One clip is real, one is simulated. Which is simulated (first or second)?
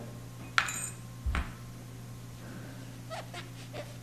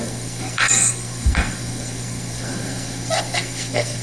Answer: second